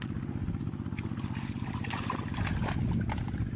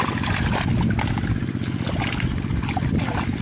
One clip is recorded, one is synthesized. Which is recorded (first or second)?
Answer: second